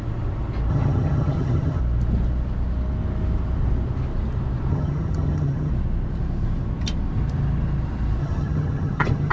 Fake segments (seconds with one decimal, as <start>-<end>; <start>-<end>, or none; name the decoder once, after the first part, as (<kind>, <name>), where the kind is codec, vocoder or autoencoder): 0.7-1.8 (vocoder, HiFi-GAN); 4.7-5.7; 8.2-9.3